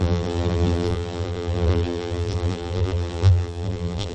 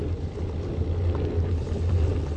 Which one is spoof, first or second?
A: first